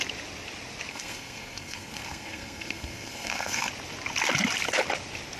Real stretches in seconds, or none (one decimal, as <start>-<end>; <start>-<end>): 0.0-0.9; 3.7-5.4